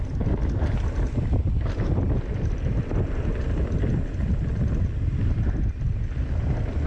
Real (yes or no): yes